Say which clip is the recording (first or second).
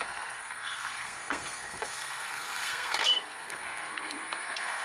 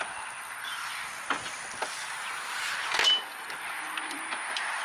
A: second